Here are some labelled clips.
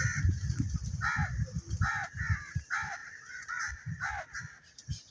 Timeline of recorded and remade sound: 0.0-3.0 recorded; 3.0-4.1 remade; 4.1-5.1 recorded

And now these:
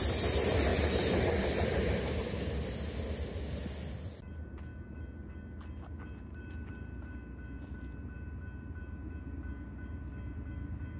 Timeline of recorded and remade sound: 0.0-0.7 recorded; 0.7-2.5 remade; 2.5-11.0 recorded